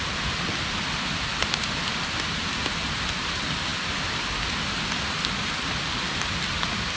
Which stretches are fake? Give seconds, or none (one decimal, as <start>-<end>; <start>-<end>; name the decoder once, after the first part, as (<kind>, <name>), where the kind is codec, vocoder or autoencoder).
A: none